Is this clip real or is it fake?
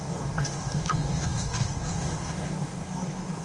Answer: fake